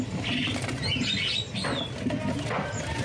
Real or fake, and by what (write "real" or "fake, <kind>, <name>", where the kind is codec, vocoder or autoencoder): real